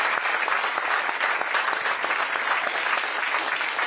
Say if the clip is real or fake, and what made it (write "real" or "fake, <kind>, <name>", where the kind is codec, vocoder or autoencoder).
real